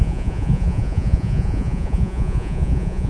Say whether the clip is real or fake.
fake